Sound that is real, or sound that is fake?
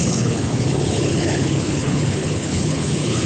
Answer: fake